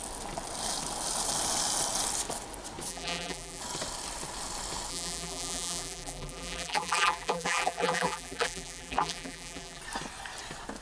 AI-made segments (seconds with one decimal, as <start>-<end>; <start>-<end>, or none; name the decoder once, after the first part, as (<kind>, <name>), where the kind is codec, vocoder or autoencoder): 2.9-3.6 (vocoder, BigVGAN v2); 4.9-9.8